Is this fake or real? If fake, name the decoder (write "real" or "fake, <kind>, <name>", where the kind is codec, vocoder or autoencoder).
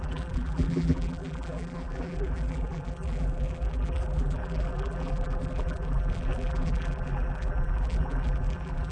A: fake, vocoder, BigVGAN v2